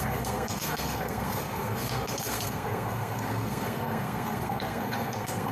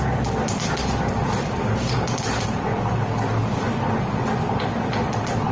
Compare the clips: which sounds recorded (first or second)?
second